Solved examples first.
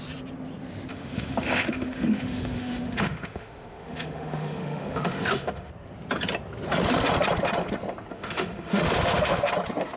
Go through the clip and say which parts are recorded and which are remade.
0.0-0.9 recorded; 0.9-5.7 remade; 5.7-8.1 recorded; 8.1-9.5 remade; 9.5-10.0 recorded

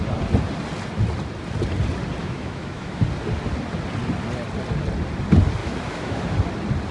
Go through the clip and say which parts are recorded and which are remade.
0.0-2.2 recorded; 2.2-3.0 remade; 3.0-5.6 recorded; 5.6-6.2 remade; 6.2-6.9 recorded

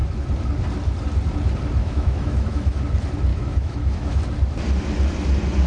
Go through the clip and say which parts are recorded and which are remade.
0.0-1.8 recorded; 1.8-2.8 remade; 2.8-3.3 recorded; 3.3-4.2 remade; 4.2-5.7 recorded

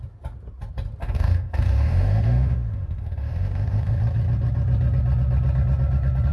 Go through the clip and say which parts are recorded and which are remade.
0.0-1.0 recorded; 1.0-4.0 remade; 4.0-6.3 recorded

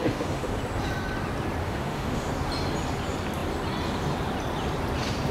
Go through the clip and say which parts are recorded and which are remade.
0.0-0.6 remade; 0.6-1.6 recorded; 1.6-2.3 remade; 2.3-5.3 recorded

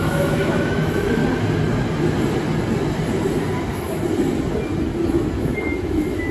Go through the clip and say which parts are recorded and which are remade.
0.0-1.2 remade; 1.2-5.0 recorded; 5.0-6.3 remade

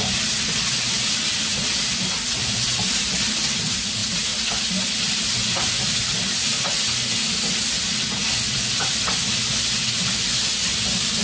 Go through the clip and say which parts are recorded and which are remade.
0.0-11.2 recorded